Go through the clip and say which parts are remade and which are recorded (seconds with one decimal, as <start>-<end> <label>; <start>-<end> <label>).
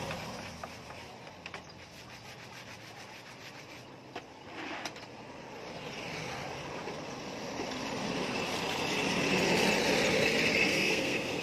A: 0.0-10.7 recorded; 10.7-11.4 remade